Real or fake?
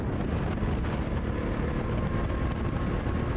real